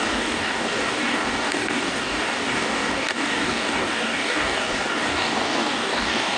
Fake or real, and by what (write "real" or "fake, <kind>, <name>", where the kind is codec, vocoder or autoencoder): fake, codec, DAC